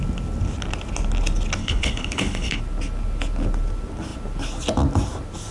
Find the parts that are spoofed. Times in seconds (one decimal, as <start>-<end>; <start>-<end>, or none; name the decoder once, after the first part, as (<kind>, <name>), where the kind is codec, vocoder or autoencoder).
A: 1.6-2.6 (codec, HILCodec)